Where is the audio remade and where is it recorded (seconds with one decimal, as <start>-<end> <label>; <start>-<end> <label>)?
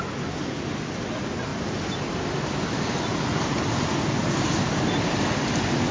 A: 0.0-5.9 recorded